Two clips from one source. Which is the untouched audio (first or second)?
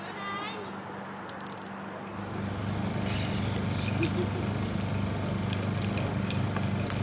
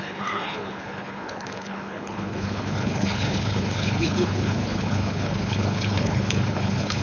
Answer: first